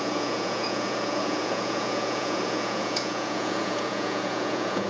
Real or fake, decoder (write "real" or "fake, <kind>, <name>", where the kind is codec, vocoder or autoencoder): fake, vocoder, Vocos